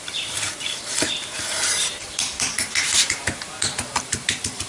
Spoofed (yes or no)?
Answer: yes